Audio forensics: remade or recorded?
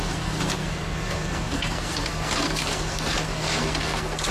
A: remade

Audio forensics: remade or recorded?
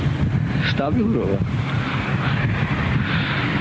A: recorded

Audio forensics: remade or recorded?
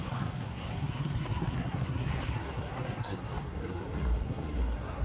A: remade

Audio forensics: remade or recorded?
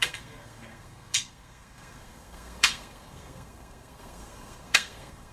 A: remade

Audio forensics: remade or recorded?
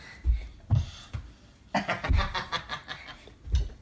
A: recorded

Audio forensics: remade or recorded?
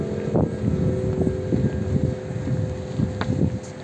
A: recorded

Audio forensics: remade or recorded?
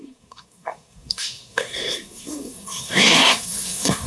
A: remade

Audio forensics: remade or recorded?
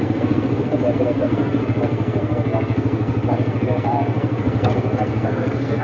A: remade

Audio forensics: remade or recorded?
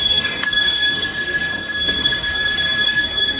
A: remade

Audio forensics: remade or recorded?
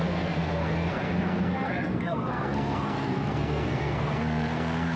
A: remade